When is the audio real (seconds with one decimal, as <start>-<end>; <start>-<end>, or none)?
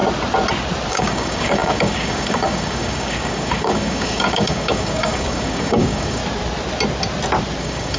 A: 0.0-0.9; 6.2-7.6